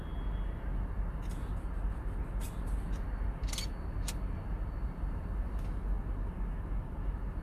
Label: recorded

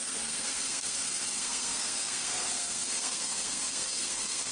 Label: remade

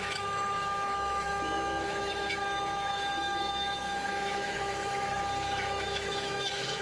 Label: remade